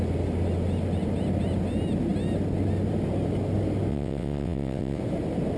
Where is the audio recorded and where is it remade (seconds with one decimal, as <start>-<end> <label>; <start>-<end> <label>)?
0.0-3.9 recorded; 3.9-5.0 remade; 5.0-5.6 recorded